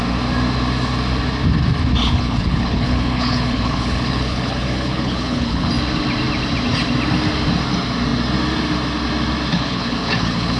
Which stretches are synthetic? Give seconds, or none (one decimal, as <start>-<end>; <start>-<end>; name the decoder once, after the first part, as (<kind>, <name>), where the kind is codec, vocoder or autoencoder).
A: 2.0-5.7 (codec, HILCodec); 9.5-10.6